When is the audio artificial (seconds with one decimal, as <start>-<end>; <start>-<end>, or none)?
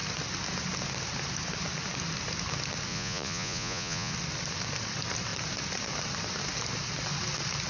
2.9-4.1